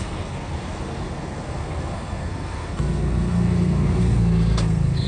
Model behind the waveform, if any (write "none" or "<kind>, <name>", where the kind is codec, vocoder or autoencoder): codec, SNAC